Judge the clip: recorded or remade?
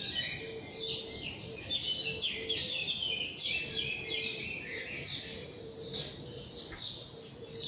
recorded